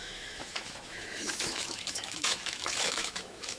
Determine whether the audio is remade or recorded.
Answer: remade